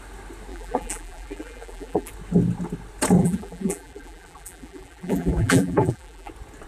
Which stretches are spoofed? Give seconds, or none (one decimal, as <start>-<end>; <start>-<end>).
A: 0.5-2.1; 3.2-6.3